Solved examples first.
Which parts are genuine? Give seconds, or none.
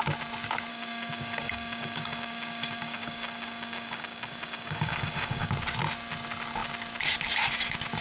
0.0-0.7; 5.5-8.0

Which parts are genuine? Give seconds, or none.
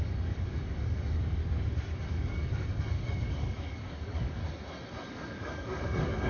1.4-2.0; 4.4-5.1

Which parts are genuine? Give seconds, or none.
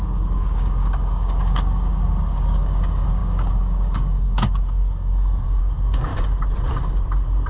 6.1-7.5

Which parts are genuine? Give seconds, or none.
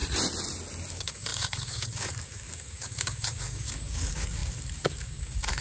0.0-0.9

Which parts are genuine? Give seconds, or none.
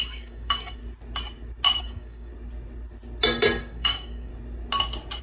0.8-1.8; 2.3-3.6; 4.3-5.2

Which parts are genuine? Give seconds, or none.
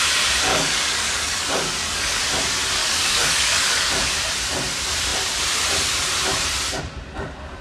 0.0-0.5; 2.2-2.8; 4.1-7.6